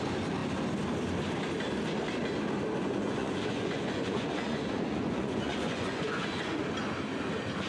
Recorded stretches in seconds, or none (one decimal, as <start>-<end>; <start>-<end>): 0.0-2.8; 6.6-7.7